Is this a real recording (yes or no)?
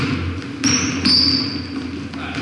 yes